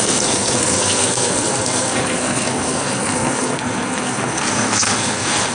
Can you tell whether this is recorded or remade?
remade